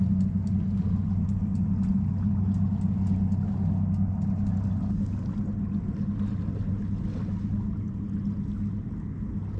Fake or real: real